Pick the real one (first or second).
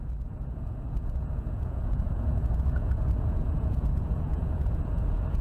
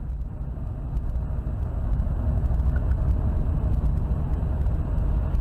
second